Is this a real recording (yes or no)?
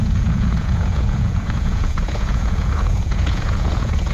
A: no